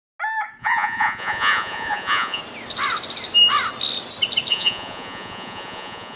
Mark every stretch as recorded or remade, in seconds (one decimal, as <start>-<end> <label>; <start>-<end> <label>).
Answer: 0.0-0.6 recorded; 0.6-2.4 remade; 2.4-4.5 recorded; 4.5-6.2 remade